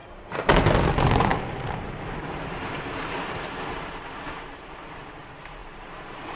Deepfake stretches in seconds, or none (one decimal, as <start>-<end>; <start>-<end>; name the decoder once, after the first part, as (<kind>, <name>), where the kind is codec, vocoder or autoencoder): 0.0-0.6 (vocoder, BigVGAN v2); 1.3-5.1; 5.6-6.4